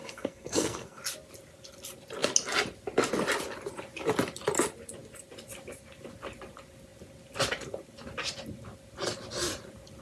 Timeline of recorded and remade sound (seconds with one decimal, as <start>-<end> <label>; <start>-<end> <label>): 0.0-1.0 remade; 1.0-10.0 recorded